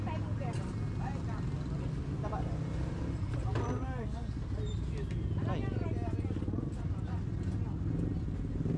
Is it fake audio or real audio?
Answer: real